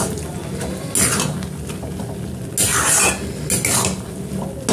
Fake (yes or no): no